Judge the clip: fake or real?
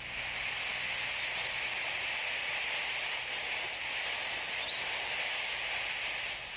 real